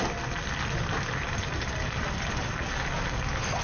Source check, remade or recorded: recorded